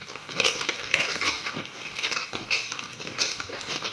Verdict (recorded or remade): remade